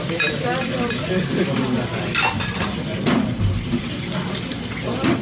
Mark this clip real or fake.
real